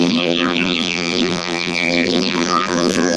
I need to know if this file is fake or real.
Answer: fake